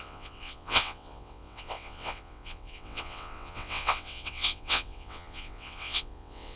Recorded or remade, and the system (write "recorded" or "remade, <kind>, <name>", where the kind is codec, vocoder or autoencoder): remade, vocoder, WaveNeXt